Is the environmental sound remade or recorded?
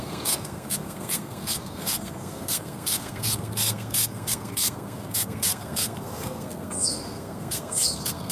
remade